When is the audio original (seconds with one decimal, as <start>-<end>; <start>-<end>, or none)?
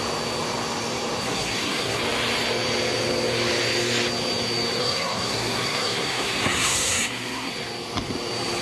0.0-1.2; 2.0-4.8; 7.5-8.6